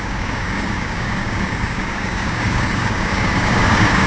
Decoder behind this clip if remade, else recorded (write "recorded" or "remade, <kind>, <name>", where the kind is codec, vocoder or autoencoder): remade, codec, DAC